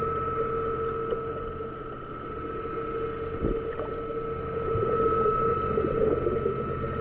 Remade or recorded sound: recorded